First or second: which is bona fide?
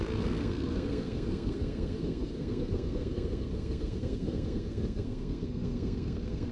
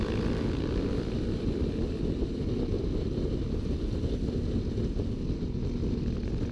second